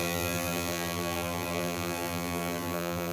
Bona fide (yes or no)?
no